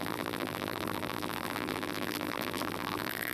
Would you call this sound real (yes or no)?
no